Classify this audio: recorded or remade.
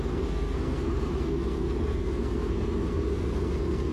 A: remade